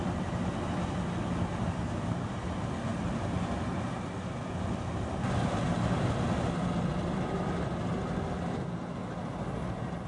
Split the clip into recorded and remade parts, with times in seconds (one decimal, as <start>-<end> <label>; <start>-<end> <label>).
0.0-10.1 recorded